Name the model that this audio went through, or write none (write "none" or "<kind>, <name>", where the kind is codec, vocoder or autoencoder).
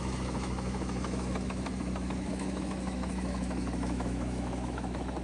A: autoencoder, DAC-VAE